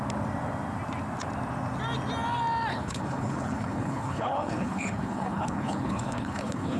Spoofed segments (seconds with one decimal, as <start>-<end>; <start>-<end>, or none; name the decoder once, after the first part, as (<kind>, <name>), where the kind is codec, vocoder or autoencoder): 2.7-6.8 (codec, HILCodec)